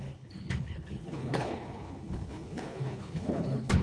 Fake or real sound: fake